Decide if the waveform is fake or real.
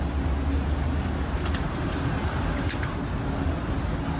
real